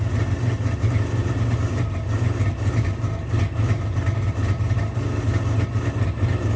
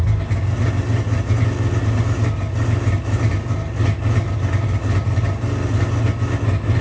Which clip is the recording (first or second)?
second